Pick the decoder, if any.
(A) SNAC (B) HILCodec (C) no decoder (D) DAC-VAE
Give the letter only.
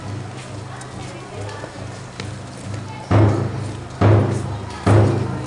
C